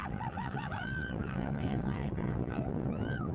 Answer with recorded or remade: remade